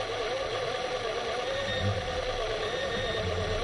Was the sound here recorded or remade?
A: recorded